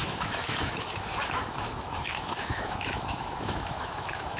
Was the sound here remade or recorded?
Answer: remade